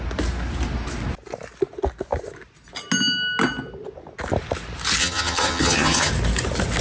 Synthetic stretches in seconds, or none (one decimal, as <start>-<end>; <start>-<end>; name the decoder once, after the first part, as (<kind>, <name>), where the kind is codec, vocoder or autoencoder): 5.0-6.1 (vocoder, HiFi-GAN)